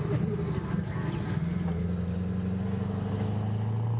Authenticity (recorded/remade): recorded